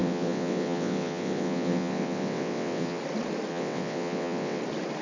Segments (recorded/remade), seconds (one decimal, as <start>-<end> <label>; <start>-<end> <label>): 0.0-3.0 remade; 3.0-3.5 recorded; 3.5-4.6 remade; 4.6-5.0 recorded